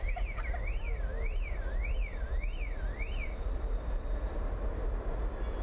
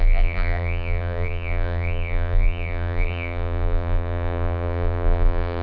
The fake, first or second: second